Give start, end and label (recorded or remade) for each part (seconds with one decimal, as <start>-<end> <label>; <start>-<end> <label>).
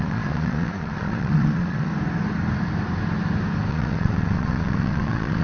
0.0-1.9 remade; 1.9-3.7 recorded; 3.7-5.4 remade